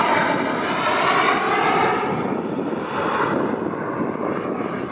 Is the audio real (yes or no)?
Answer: yes